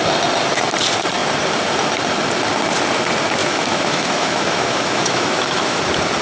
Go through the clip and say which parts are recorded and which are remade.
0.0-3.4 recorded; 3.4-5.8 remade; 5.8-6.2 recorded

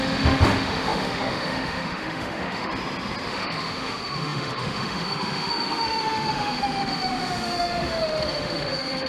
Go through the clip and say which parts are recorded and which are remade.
0.0-2.7 remade; 2.7-3.3 recorded; 3.3-9.1 remade